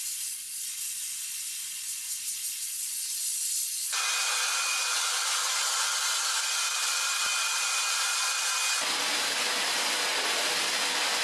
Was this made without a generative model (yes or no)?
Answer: yes